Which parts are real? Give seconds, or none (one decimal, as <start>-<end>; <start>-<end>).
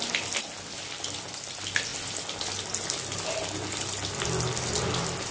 0.0-5.3